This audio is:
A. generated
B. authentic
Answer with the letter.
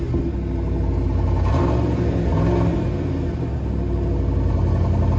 B